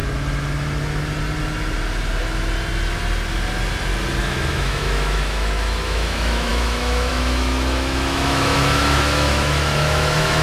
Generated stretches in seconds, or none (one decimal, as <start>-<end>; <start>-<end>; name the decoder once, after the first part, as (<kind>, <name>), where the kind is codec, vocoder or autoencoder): 4.2-10.4 (autoencoder, DAC-VAE)